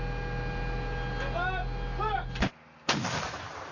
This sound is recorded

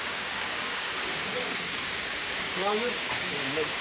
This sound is remade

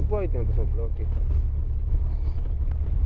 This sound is recorded